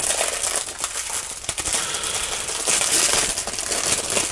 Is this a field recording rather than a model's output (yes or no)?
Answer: yes